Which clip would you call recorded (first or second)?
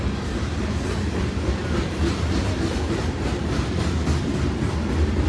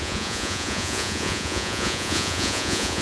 first